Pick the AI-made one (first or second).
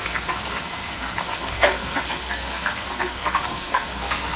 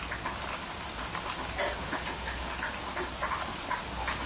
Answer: first